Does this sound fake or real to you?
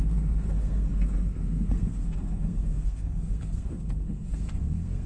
fake